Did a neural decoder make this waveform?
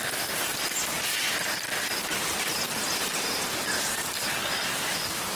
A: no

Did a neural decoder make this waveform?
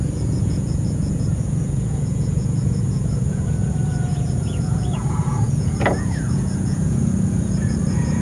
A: yes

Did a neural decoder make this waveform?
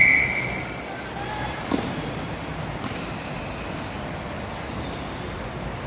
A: no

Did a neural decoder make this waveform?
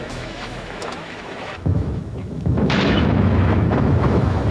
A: yes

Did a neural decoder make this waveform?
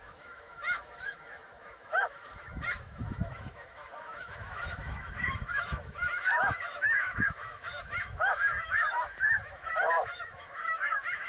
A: yes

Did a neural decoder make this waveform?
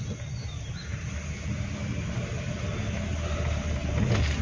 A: no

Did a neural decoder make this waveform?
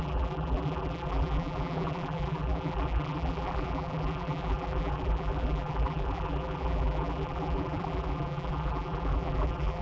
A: yes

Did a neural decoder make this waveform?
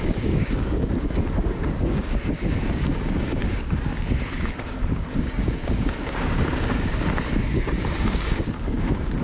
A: yes